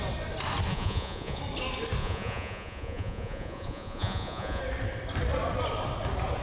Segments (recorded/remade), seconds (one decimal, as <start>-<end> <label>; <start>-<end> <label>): 0.0-0.7 recorded; 0.7-1.4 remade; 1.4-2.0 recorded; 2.0-4.6 remade; 4.6-6.4 recorded